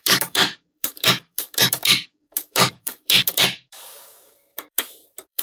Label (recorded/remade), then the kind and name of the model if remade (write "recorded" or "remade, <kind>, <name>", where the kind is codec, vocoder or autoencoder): remade, codec, DAC